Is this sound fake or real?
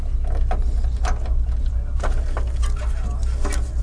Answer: real